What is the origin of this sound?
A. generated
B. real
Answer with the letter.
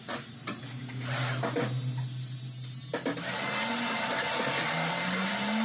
B